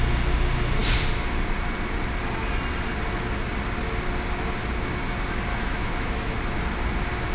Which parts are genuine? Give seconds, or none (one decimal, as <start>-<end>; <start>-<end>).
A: 0.0-5.5; 6.4-7.3